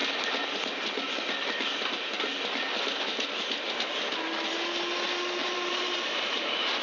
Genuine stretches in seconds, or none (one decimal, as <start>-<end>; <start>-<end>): 0.0-5.4; 6.3-6.8